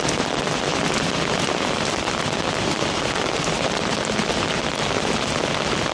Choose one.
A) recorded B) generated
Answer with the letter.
A